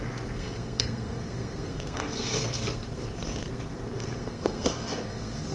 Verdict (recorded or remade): remade